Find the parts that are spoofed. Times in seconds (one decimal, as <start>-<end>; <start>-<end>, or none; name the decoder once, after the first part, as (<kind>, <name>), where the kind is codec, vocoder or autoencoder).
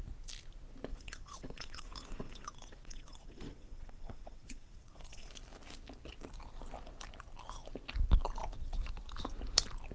0.9-5.3 (vocoder, WaveNeXt)